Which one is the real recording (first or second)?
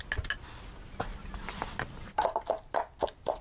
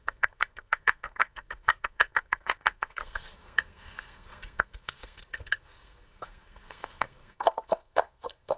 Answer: first